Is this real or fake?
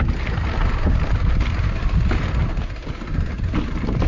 real